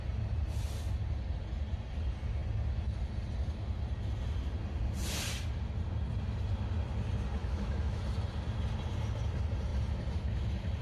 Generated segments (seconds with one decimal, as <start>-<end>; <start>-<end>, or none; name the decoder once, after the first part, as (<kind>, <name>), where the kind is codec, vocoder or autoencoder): 7.4-8.0 (autoencoder, DAC-VAE)